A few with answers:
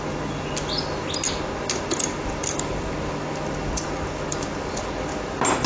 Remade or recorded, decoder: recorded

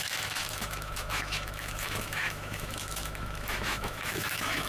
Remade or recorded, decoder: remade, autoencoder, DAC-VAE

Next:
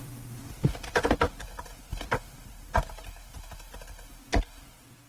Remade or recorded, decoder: recorded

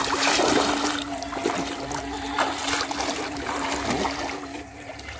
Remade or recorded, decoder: recorded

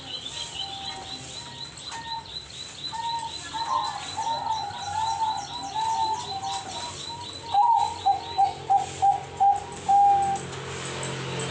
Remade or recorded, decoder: recorded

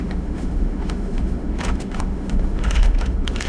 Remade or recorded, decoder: remade, autoencoder, DAC-VAE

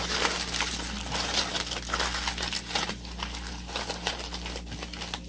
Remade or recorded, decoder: recorded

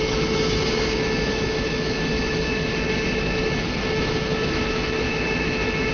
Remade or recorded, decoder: remade, autoencoder, DAC-VAE